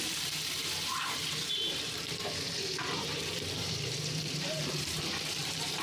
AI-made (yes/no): yes